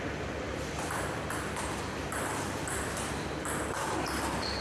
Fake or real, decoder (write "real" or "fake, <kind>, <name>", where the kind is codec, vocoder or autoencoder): fake, vocoder, BigVGAN v2